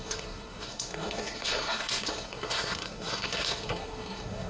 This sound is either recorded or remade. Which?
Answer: remade